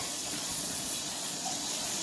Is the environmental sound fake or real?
fake